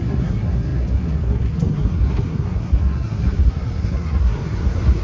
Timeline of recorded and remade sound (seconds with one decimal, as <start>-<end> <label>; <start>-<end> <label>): 0.0-5.0 remade